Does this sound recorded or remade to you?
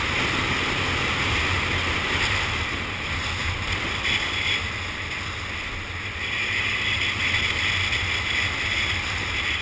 recorded